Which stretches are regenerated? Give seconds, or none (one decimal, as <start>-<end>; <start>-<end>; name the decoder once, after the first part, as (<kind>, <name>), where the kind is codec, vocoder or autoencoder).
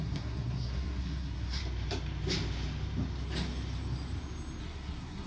0.0-1.6 (codec, SNAC); 4.6-5.3